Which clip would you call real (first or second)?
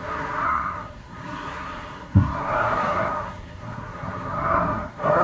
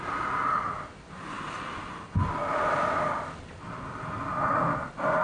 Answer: second